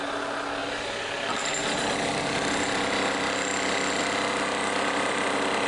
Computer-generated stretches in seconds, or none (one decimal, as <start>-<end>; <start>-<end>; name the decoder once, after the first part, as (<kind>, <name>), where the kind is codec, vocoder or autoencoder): none